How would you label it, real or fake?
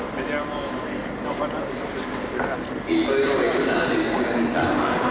real